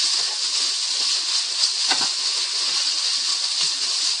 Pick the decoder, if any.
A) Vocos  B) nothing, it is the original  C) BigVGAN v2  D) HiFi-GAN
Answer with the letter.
A